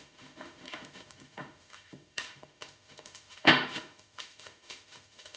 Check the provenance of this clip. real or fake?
fake